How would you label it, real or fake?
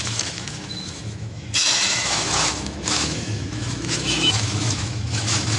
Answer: fake